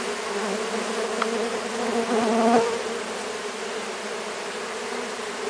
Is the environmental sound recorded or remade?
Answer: recorded